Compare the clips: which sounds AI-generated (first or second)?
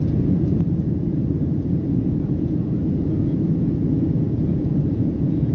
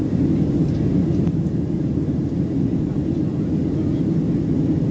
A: first